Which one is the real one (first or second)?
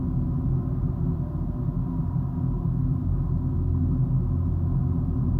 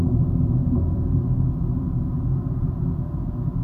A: first